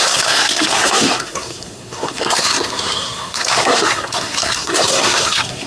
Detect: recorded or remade remade